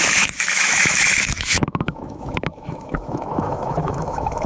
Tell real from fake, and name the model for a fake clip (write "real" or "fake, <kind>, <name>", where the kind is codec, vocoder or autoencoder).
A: fake, autoencoder, DAC-VAE